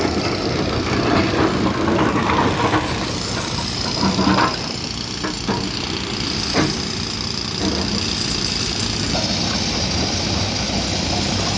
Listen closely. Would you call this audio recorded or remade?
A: recorded